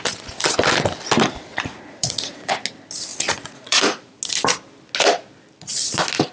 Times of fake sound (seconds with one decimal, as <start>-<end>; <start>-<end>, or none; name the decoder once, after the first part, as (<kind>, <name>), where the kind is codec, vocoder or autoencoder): 1.5-2.5 (vocoder, Vocos); 3.1-4.2